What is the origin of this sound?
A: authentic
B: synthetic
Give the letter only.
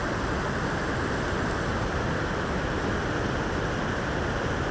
A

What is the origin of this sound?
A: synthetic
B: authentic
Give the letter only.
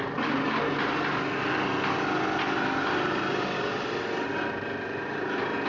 B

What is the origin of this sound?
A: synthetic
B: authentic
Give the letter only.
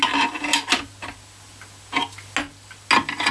B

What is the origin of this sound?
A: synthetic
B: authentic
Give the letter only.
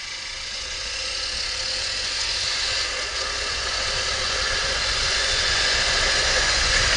A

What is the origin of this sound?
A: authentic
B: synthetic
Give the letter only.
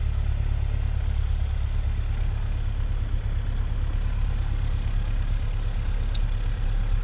A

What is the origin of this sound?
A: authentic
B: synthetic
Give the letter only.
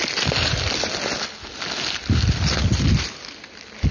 A